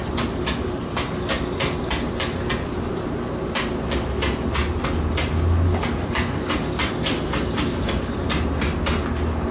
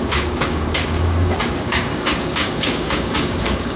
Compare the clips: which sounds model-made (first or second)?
second